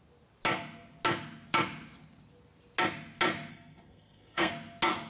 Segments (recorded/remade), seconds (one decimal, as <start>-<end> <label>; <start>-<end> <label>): 0.0-3.5 recorded; 3.5-4.5 remade; 4.5-5.1 recorded